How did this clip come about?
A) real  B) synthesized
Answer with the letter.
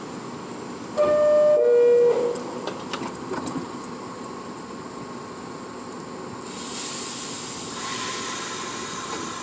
A